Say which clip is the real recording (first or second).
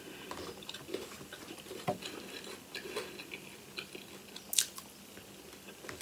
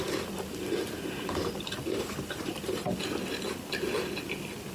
first